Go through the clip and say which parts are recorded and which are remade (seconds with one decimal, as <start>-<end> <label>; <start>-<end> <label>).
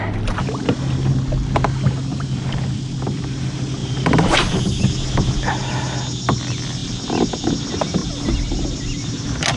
0.0-2.1 recorded; 2.1-2.6 remade; 2.6-3.8 recorded; 3.8-4.6 remade; 4.6-9.6 recorded